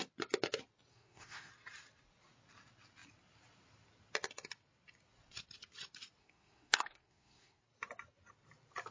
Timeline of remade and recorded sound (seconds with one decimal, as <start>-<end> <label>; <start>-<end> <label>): 0.0-0.9 recorded; 0.9-1.5 remade; 1.5-6.2 recorded; 6.2-7.6 remade; 7.6-8.9 recorded

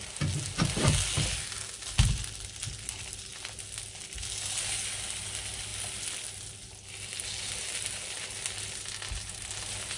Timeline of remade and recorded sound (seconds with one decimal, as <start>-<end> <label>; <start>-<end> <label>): 0.0-10.0 recorded

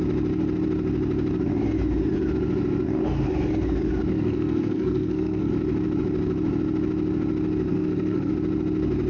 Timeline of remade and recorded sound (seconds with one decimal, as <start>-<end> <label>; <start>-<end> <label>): 0.0-4.1 recorded; 4.1-5.5 remade; 5.5-7.7 recorded; 7.7-8.3 remade; 8.3-9.1 recorded

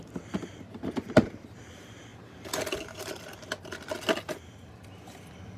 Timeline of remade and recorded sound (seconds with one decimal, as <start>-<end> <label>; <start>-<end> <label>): 0.0-5.6 recorded